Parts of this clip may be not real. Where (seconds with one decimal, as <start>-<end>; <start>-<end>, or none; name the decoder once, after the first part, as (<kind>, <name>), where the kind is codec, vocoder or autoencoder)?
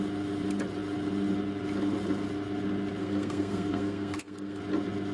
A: 3.0-4.6 (codec, SNAC)